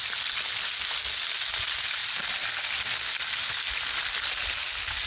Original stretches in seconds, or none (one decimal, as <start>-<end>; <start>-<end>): 0.0-5.1

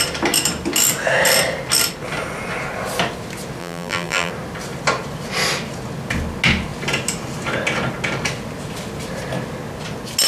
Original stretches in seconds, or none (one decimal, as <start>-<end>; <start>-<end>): 0.0-3.6; 4.3-10.3

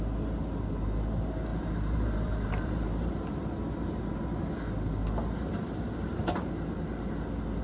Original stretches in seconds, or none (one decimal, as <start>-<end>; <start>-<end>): 0.0-1.5; 4.6-6.1; 6.6-7.6

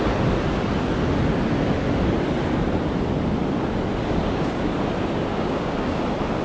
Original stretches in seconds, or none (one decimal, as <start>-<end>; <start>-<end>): 0.0-4.2; 4.8-5.3; 6.0-6.4

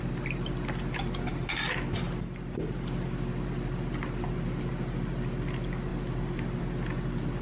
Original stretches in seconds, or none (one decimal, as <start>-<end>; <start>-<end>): 0.0-7.4